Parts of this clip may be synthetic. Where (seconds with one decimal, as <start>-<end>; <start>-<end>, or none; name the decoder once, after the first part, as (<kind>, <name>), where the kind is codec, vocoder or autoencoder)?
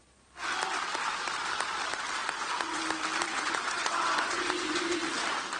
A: 2.2-2.8 (vocoder, Vocos); 3.3-5.0